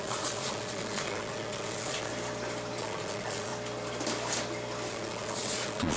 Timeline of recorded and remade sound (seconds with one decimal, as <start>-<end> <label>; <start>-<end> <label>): 0.0-2.1 remade; 2.1-2.8 recorded; 2.8-3.5 remade; 3.5-4.9 recorded; 4.9-6.0 remade